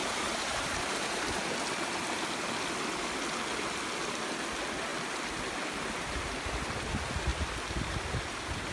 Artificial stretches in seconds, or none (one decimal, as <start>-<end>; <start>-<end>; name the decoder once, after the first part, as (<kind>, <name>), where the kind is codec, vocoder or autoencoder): 0.0-0.8 (vocoder, BigVGAN v2)